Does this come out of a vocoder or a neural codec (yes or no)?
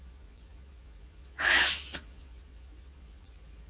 yes